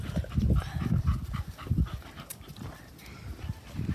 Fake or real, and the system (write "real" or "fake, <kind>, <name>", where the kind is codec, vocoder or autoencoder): fake, vocoder, BigVGAN v2